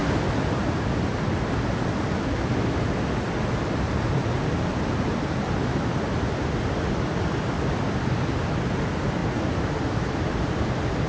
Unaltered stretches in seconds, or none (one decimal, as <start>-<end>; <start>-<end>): 0.0-11.1